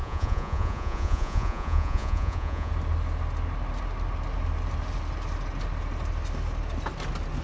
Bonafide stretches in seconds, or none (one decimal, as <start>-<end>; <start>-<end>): 2.7-7.4